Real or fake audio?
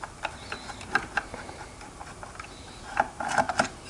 real